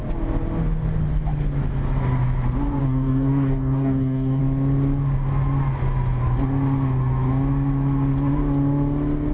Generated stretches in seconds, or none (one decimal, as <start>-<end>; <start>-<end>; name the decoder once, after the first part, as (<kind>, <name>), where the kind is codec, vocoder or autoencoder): 2.8-4.4 (codec, DAC)

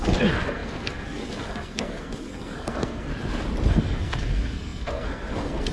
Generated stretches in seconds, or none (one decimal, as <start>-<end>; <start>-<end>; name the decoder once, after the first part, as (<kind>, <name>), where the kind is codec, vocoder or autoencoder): 0.0-3.1 (codec, SNAC); 3.7-5.7

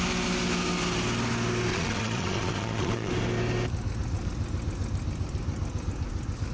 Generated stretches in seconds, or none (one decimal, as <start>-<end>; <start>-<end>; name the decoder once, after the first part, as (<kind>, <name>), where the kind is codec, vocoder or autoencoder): 1.7-3.1 (vocoder, Vocos)

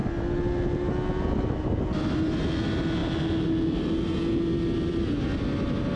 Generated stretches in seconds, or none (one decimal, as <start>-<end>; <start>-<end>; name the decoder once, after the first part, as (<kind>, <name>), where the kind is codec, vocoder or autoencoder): none

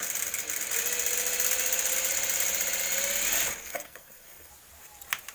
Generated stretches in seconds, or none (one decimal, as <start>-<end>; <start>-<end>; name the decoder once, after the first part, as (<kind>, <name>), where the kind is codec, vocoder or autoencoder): 3.6-4.5 (codec, SNAC)